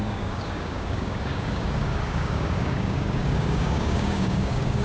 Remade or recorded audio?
remade